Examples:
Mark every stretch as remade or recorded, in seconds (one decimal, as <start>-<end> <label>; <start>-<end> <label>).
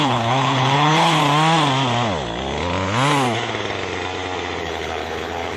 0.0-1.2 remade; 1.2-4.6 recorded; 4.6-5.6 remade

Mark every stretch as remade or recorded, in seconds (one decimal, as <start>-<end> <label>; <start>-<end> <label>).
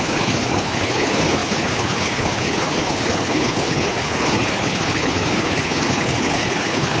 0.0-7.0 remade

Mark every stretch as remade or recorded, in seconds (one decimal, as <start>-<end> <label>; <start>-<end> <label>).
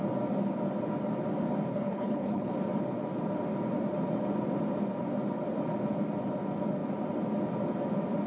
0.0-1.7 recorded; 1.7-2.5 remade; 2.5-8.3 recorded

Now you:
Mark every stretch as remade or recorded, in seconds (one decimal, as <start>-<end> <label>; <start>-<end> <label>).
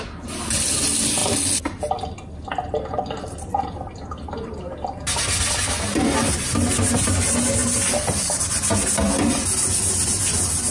0.0-10.7 recorded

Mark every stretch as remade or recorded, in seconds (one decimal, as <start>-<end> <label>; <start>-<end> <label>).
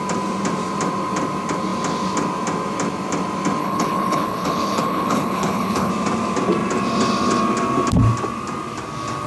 0.0-3.6 recorded; 3.6-5.9 remade; 5.9-9.3 recorded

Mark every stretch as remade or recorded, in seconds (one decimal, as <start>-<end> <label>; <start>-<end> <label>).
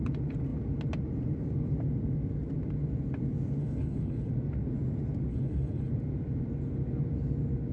0.0-3.6 recorded; 3.6-4.3 remade; 4.3-5.3 recorded; 5.3-5.9 remade; 5.9-7.7 recorded